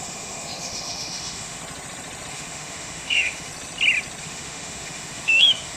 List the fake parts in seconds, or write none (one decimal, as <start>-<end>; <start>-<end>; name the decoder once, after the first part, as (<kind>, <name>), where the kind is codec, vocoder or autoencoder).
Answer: 0.0-1.6 (autoencoder, DAC-VAE); 2.3-3.5; 4.2-5.8